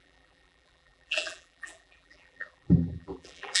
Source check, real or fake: fake